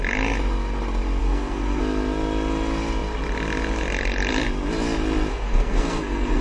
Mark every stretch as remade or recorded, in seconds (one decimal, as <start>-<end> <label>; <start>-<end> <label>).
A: 0.0-1.2 recorded; 1.2-1.8 remade; 1.8-5.3 recorded; 5.3-6.4 remade